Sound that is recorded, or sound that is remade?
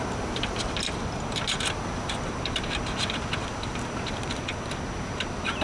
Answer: recorded